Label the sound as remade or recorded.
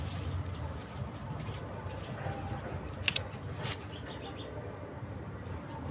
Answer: recorded